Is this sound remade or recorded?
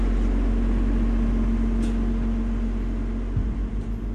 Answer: recorded